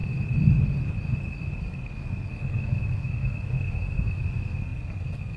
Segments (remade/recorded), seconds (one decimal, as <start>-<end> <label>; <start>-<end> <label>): 0.0-1.6 recorded; 1.6-5.4 remade